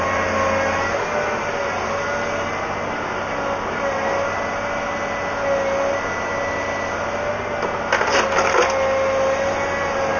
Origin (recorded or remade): recorded